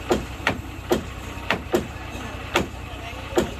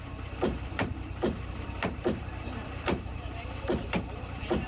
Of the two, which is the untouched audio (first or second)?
first